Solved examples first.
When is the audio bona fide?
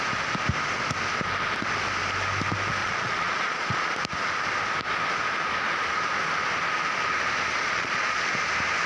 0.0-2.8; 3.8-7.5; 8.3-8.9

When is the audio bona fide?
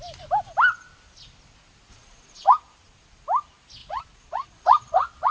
0.0-1.9; 2.5-3.8